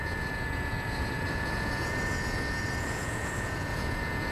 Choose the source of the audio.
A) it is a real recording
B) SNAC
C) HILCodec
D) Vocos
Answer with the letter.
D